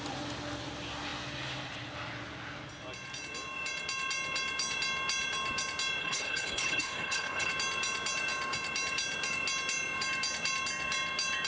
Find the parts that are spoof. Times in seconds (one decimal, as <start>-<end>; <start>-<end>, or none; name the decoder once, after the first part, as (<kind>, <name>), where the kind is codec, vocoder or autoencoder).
6.0-7.5 (codec, HILCodec)